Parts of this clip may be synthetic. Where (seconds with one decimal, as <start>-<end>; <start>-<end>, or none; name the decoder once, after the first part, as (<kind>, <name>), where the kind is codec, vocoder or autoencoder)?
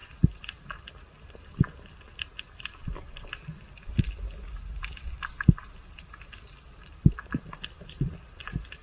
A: none